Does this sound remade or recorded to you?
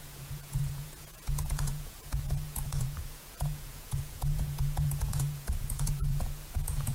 remade